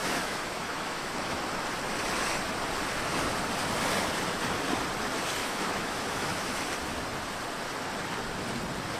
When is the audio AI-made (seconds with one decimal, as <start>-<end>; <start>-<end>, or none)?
0.0-1.4; 5.4-6.6